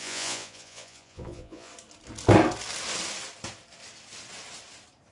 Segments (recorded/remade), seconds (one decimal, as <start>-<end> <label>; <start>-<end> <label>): 0.0-1.7 remade; 1.7-5.1 recorded